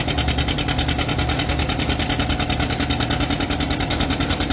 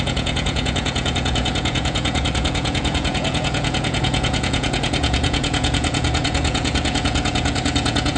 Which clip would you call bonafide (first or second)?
first